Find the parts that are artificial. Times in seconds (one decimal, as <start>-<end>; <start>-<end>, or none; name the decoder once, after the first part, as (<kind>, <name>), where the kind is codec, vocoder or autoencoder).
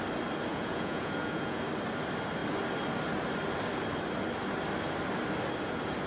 0.5-1.6 (vocoder, Vocos)